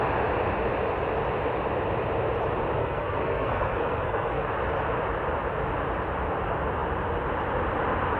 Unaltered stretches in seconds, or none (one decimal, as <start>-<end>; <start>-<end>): 0.0-2.8; 4.5-8.2